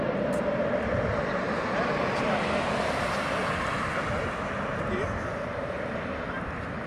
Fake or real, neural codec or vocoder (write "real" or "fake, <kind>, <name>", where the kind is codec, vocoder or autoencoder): real